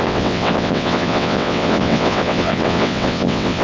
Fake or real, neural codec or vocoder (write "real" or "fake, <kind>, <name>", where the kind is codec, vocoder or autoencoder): fake, vocoder, WaveNeXt